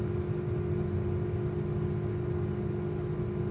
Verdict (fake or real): real